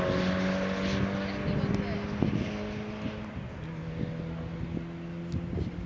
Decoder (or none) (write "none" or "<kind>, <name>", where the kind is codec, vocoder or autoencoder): none